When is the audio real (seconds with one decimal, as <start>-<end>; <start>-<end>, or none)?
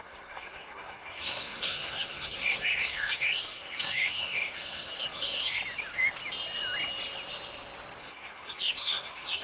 5.6-8.0